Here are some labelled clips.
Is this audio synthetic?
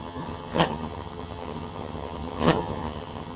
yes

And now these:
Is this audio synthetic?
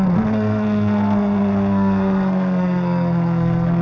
yes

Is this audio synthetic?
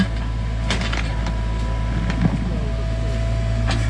no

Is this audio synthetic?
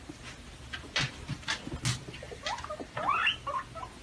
no